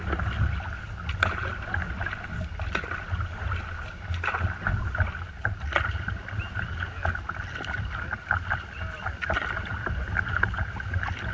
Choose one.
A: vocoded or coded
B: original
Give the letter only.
B